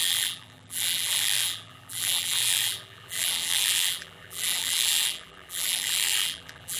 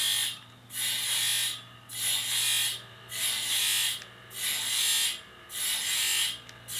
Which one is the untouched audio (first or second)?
second